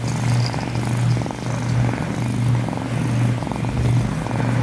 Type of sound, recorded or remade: recorded